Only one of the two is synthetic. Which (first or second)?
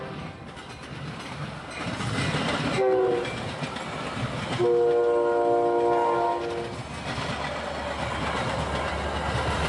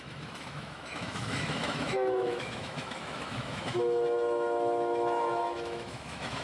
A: second